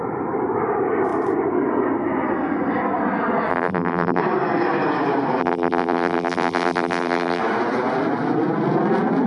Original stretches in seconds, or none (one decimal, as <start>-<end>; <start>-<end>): 0.0-3.5; 4.2-5.4; 7.4-9.3